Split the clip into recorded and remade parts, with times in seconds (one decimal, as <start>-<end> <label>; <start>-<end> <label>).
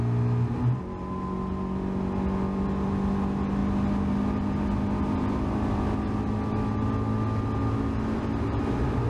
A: 0.0-9.1 recorded